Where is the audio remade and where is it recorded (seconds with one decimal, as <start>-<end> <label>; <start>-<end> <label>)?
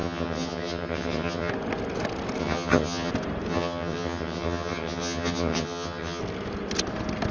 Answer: 0.0-1.5 remade; 1.5-2.4 recorded; 2.4-3.1 remade; 3.1-3.5 recorded; 3.5-6.2 remade; 6.2-7.3 recorded